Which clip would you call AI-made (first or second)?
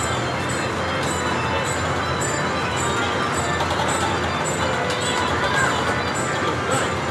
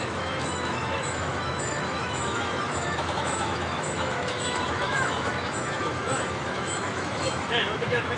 second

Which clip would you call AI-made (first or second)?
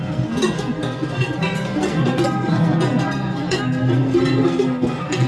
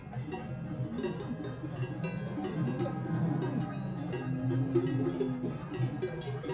first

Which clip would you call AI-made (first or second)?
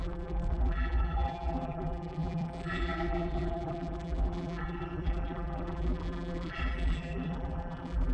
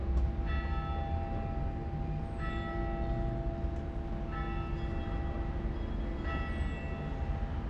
first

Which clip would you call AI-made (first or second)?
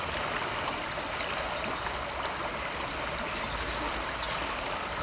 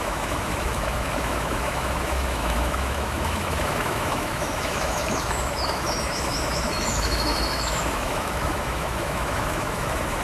second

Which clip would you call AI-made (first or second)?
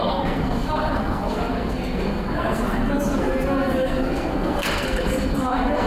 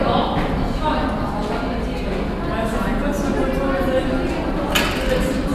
first